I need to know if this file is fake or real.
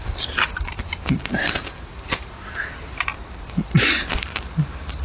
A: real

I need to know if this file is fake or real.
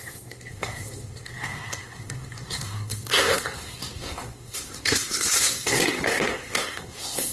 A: fake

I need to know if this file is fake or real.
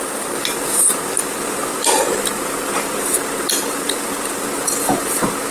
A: real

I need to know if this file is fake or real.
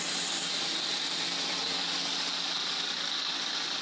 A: real